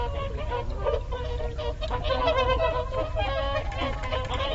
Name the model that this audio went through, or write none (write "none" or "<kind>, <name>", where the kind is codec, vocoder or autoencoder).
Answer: none